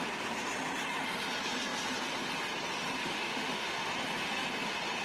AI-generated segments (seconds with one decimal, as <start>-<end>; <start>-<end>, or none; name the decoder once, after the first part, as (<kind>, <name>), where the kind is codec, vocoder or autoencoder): 3.0-3.9 (autoencoder, DAC-VAE)